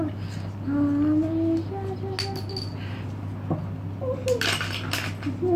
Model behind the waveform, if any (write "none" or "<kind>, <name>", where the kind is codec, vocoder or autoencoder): none